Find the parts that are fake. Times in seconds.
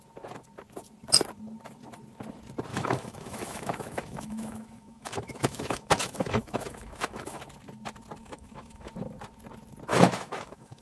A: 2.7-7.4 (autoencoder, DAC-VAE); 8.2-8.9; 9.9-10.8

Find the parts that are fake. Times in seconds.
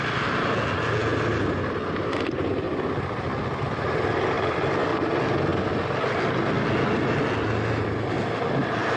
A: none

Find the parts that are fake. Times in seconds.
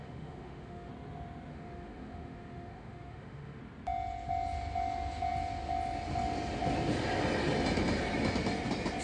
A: 0.0-0.9 (autoencoder, DAC-VAE); 1.5-3.6